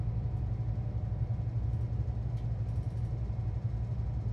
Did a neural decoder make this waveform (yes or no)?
no